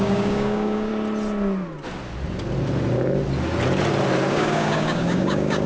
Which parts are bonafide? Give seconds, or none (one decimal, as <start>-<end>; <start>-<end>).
0.9-4.3